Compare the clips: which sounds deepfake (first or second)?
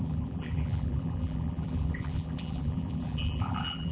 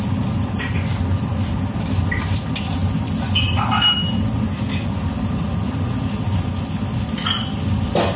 first